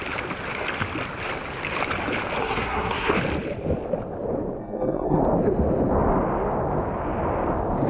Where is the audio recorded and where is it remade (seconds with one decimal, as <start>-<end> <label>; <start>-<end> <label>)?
0.0-2.4 recorded; 2.4-3.1 remade; 3.1-4.6 recorded; 4.6-5.2 remade; 5.2-7.9 recorded